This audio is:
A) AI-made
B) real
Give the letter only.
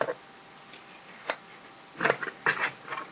B